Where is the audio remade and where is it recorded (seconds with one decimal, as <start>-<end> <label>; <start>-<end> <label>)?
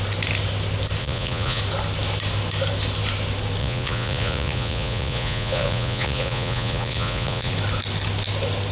0.0-1.0 recorded; 1.0-1.6 remade; 1.6-3.6 recorded; 3.6-7.5 remade; 7.5-8.7 recorded